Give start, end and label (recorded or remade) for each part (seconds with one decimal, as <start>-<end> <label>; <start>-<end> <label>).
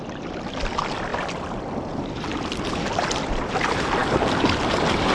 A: 0.0-5.1 recorded